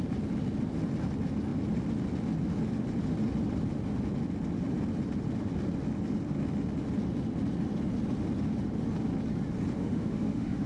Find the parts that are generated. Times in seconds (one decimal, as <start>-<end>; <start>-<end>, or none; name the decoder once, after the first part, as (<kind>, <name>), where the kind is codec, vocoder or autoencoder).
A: 9.8-10.7 (autoencoder, DAC-VAE)